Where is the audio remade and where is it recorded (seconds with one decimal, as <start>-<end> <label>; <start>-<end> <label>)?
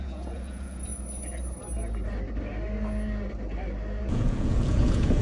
0.0-0.9 remade; 0.9-4.0 recorded; 4.0-5.2 remade